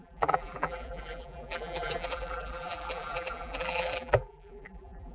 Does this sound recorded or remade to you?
remade